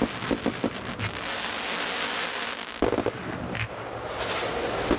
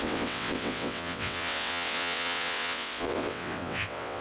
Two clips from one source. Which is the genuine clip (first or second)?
first